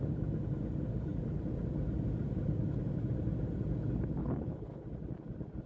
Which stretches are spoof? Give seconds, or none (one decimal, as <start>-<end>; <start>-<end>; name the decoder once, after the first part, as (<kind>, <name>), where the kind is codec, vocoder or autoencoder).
4.2-4.8 (codec, HILCodec)